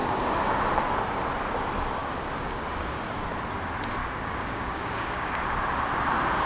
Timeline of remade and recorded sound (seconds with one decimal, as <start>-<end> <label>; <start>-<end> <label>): 0.0-0.6 remade; 0.6-2.0 recorded; 2.0-3.0 remade; 3.0-4.0 recorded; 4.0-5.4 remade; 5.4-6.5 recorded